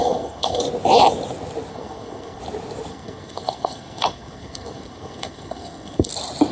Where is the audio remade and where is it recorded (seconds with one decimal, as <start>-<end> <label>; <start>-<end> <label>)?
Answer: 0.0-0.6 remade; 0.6-1.7 recorded; 1.7-2.4 remade; 2.4-2.9 recorded; 2.9-6.1 remade; 6.1-6.5 recorded